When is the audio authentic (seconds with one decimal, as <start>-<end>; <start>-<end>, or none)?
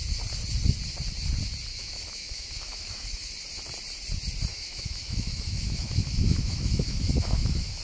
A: 0.0-1.7; 3.3-4.5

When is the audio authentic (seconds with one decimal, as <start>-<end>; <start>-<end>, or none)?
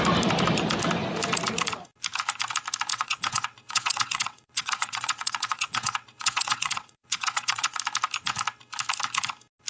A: 0.0-2.9; 7.8-9.7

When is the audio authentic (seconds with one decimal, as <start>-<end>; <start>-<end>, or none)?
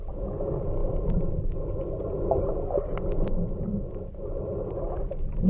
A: 0.0-5.5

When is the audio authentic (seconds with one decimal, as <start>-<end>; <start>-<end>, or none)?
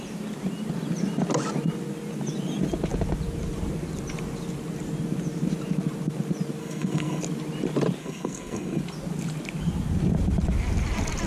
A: 0.0-6.6; 7.2-8.0; 8.8-11.3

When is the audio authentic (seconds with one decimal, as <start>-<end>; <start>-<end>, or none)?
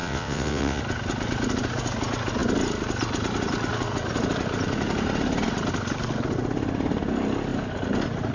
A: 0.8-8.3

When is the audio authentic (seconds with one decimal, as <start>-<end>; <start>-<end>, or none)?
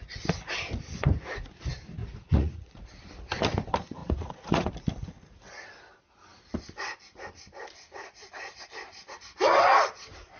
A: 0.0-2.0; 2.8-4.0; 4.7-10.4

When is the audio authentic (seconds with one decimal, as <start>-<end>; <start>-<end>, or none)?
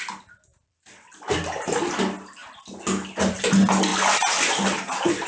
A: 0.0-5.3